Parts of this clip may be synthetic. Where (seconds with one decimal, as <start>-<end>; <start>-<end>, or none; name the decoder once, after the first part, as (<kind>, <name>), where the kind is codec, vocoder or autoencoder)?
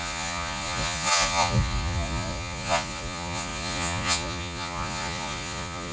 0.0-5.9 (vocoder, Vocos)